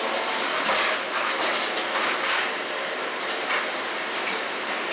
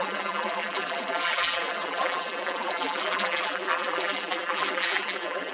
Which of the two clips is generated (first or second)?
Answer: second